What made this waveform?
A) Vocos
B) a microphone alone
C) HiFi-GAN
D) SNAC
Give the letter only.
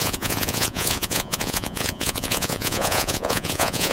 A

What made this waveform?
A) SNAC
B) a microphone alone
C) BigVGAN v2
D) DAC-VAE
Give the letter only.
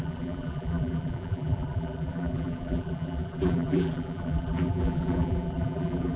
C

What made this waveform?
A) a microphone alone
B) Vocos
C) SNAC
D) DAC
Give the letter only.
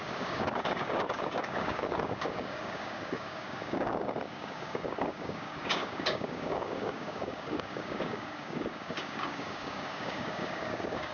D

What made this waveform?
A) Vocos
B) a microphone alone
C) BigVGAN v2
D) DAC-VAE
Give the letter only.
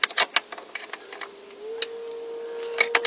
B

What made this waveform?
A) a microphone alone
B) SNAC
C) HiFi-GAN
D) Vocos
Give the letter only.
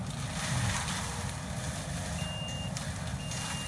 A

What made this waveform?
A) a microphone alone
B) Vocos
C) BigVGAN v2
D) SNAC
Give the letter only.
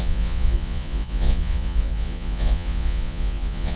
B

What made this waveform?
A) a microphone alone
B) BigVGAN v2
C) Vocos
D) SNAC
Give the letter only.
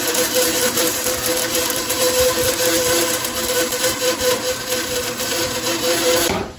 B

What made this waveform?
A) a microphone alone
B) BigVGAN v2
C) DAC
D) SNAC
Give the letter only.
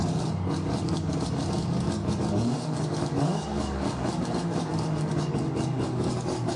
C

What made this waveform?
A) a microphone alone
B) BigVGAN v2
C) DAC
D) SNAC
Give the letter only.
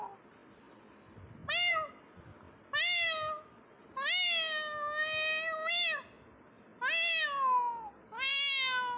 A